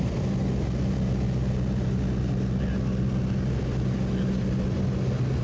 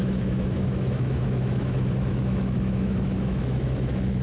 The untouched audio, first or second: first